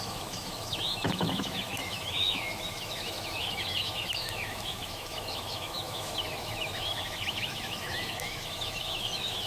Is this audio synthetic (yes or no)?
yes